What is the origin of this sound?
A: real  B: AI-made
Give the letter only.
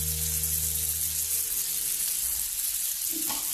A